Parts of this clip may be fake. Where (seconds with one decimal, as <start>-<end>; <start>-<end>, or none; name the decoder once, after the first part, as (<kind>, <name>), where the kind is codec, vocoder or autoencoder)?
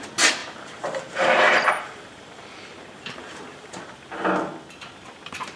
0.4-3.8 (vocoder, BigVGAN v2)